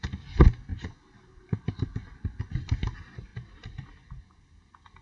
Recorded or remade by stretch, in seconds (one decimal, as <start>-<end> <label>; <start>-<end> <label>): 0.0-0.7 recorded; 0.7-1.9 remade; 1.9-3.3 recorded; 3.3-4.4 remade; 4.4-5.0 recorded